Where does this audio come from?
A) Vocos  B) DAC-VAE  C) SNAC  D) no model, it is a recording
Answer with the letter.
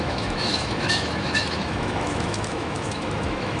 B